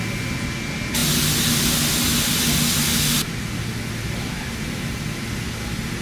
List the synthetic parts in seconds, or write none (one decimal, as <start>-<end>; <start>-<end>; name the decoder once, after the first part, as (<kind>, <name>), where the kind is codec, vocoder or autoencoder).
none